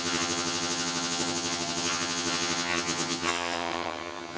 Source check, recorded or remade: remade